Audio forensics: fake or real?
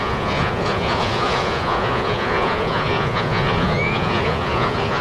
fake